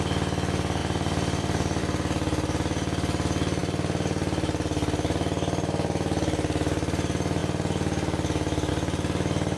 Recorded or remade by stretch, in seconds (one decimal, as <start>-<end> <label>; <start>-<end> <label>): 0.0-0.8 recorded; 0.8-1.8 remade; 1.8-9.6 recorded

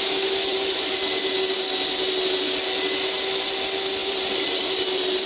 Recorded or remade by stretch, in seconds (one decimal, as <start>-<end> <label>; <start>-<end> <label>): 0.0-0.5 recorded; 0.5-1.2 remade; 1.2-4.0 recorded; 4.0-5.3 remade

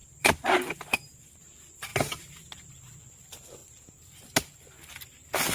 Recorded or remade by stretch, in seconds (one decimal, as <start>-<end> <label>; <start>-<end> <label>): 0.0-0.7 remade; 0.7-1.9 recorded; 1.9-2.7 remade; 2.7-5.5 recorded

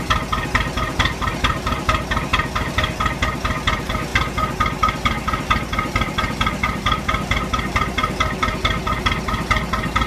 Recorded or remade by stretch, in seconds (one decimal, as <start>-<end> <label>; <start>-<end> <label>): 0.0-10.1 remade